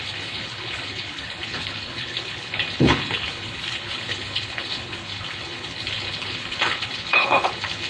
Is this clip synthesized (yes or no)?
yes